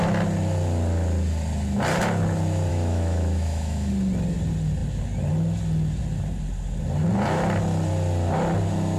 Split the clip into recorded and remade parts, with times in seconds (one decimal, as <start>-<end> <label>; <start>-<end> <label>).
0.0-2.7 recorded; 2.7-3.9 remade; 3.9-9.0 recorded

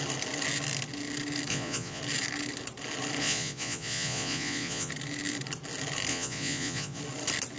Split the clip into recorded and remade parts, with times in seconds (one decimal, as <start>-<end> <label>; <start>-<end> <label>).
0.0-1.5 recorded; 1.5-2.0 remade; 2.0-3.2 recorded; 3.2-4.9 remade; 4.9-6.1 recorded; 6.1-7.0 remade; 7.0-7.6 recorded

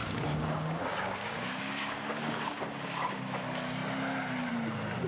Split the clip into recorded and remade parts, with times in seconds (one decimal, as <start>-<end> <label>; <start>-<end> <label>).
0.0-3.1 remade; 3.1-5.1 recorded

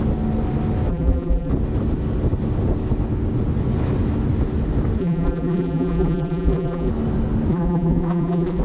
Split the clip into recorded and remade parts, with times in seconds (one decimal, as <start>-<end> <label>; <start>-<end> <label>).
0.0-0.9 recorded; 0.9-1.5 remade; 1.5-5.0 recorded; 5.0-6.9 remade; 6.9-7.5 recorded; 7.5-8.6 remade